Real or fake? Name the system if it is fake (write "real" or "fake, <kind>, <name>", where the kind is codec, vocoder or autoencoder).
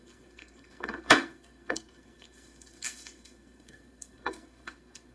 fake, codec, SNAC